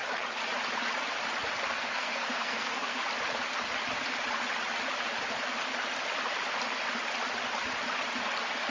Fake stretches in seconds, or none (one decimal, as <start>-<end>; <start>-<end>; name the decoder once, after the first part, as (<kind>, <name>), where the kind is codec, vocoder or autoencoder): 1.7-3.0 (codec, SNAC)